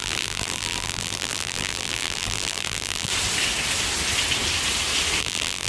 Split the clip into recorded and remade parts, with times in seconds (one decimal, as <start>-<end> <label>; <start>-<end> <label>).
0.0-3.1 remade; 3.1-5.2 recorded; 5.2-5.7 remade